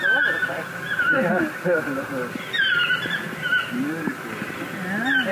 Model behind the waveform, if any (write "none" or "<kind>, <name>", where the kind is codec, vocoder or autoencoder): none